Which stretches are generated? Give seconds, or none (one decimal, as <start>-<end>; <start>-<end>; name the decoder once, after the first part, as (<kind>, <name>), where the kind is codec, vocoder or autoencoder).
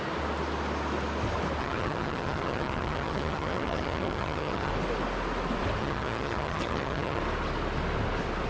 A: 1.6-4.7 (vocoder, HiFi-GAN); 5.8-7.2